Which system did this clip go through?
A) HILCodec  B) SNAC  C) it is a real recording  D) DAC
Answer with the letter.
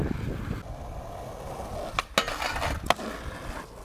C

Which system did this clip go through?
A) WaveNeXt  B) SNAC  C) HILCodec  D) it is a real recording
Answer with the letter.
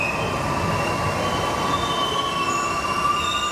D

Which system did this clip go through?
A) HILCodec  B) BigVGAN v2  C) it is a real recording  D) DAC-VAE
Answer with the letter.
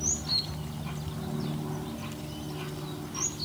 C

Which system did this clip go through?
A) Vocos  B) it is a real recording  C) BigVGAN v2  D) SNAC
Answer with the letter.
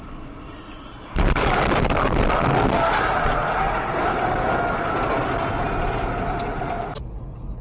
B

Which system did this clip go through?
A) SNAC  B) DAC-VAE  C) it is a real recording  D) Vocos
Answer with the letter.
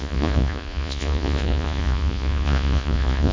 D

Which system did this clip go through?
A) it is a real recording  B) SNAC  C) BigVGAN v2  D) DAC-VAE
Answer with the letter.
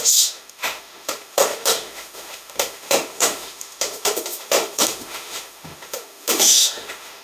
D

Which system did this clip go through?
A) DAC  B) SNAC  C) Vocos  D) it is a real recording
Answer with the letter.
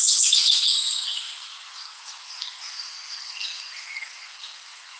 B